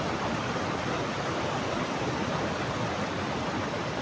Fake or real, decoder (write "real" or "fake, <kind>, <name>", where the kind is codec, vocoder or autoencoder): real